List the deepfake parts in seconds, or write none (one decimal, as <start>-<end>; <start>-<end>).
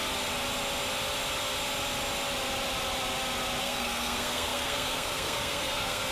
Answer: 3.6-6.1